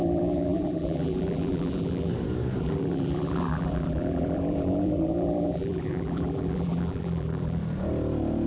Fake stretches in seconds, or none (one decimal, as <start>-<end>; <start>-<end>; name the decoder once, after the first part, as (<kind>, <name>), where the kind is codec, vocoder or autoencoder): 0.0-2.1 (vocoder, BigVGAN v2); 2.6-7.6